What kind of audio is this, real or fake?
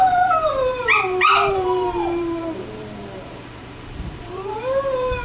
fake